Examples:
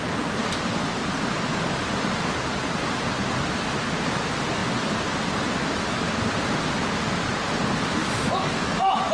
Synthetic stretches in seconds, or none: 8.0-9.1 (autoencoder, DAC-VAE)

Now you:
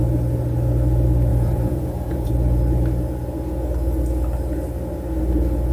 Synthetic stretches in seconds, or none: 1.3-2.3 (vocoder, Vocos)

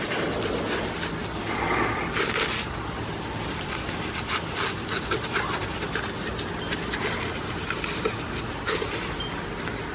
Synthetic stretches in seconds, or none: none

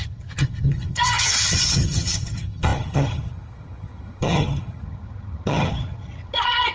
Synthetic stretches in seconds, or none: 0.0-6.7 (vocoder, HiFi-GAN)

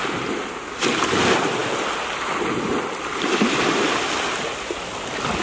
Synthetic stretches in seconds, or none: none